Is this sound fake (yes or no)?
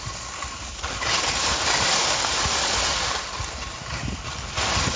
no